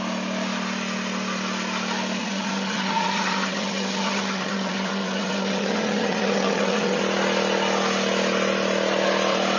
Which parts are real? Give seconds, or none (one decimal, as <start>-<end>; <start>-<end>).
0.0-2.2; 7.0-9.6